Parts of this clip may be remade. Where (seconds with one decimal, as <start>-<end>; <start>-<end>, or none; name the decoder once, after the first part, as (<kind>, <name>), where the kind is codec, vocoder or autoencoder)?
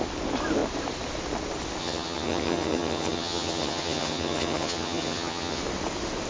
1.8-5.6 (vocoder, HiFi-GAN)